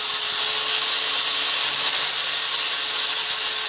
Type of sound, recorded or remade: recorded